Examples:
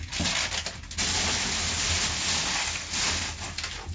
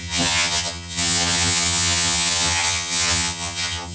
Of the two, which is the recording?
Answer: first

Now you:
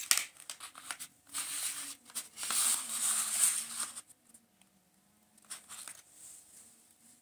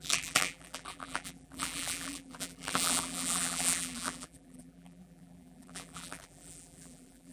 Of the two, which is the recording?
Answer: first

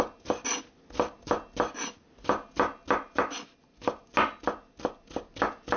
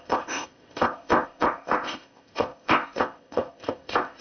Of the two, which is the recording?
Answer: first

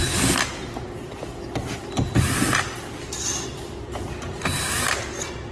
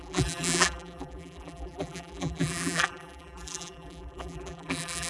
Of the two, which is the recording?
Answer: first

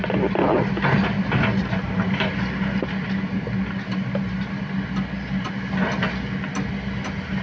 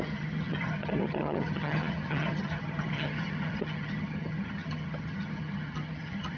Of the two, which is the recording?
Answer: first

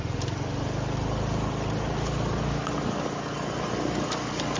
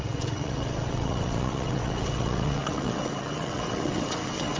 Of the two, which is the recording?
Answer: first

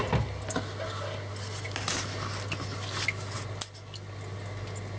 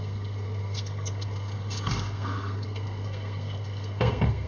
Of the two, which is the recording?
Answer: first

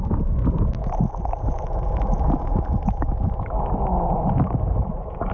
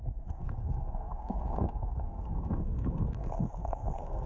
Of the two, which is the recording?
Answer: first